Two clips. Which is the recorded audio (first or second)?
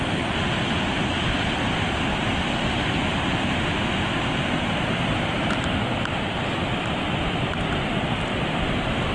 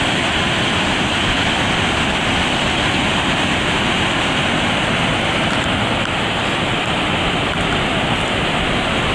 first